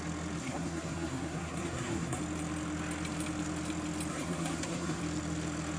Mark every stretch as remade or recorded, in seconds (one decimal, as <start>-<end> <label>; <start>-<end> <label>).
0.0-0.4 recorded; 0.4-2.2 remade; 2.2-4.1 recorded; 4.1-5.0 remade; 5.0-5.8 recorded